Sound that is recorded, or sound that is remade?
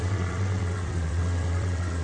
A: remade